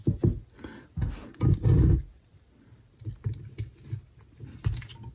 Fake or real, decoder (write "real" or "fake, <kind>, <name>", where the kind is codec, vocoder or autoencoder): real